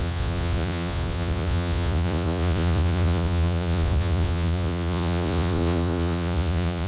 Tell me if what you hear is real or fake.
fake